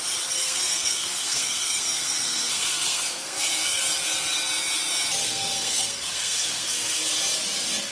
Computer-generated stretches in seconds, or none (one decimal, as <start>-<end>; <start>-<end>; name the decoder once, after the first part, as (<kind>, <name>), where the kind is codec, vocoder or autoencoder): 0.4-3.8 (codec, SNAC); 5.2-7.0